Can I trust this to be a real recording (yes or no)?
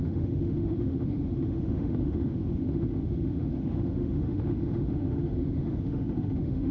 no